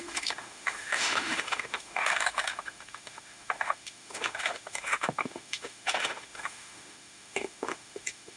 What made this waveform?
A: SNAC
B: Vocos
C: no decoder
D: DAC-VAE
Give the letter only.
D